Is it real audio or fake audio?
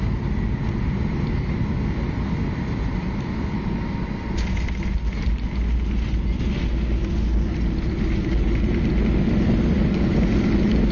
real